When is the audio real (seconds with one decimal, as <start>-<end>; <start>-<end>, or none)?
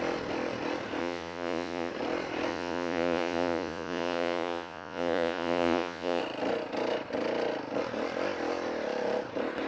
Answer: 0.0-1.0; 1.9-2.5; 6.2-9.7